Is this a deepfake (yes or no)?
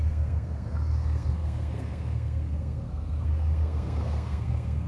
yes